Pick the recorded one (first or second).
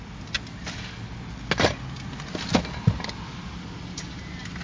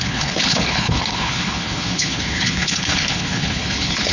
first